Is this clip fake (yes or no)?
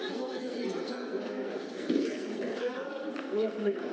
yes